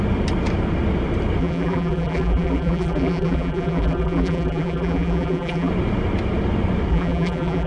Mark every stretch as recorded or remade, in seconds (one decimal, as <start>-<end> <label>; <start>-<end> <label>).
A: 0.0-1.4 recorded; 1.4-5.7 remade; 5.7-6.9 recorded; 6.9-7.7 remade